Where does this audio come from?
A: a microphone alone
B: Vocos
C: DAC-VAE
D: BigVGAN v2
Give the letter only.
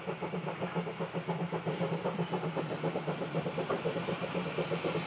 A